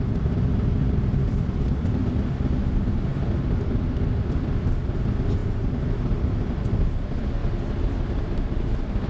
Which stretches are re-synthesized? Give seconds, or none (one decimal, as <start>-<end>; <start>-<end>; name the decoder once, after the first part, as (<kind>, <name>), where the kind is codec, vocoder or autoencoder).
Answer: 0.0-2.0 (vocoder, BigVGAN v2); 3.1-5.4; 6.1-7.4; 8.0-9.1